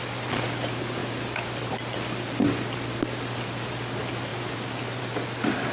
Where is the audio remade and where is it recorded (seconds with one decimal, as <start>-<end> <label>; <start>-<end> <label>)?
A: 0.0-4.3 remade; 4.3-5.0 recorded; 5.0-5.7 remade